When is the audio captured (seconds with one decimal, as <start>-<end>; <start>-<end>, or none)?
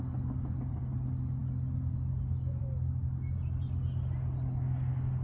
0.0-5.2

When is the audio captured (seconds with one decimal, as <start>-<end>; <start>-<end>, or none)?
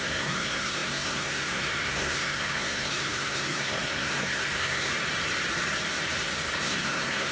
4.9-6.6